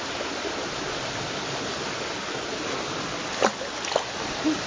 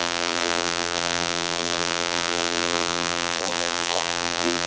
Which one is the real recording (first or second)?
first